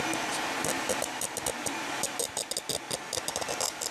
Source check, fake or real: real